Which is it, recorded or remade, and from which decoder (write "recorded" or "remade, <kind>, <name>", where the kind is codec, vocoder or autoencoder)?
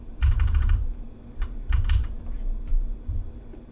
remade, vocoder, BigVGAN v2